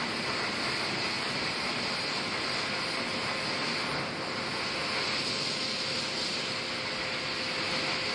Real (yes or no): yes